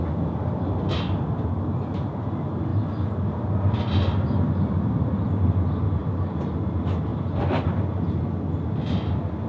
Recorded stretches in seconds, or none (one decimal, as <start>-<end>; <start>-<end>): 0.0-6.0; 6.5-7.1; 8.1-9.5